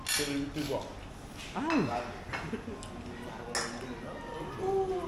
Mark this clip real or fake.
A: real